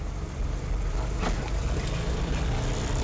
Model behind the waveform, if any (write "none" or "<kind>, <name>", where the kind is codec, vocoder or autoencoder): none